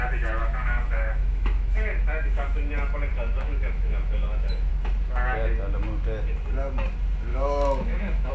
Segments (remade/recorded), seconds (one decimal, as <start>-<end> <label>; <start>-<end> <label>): 0.0-0.4 recorded; 0.4-2.7 remade; 2.7-3.1 recorded; 3.1-4.7 remade; 4.7-7.3 recorded; 7.3-8.3 remade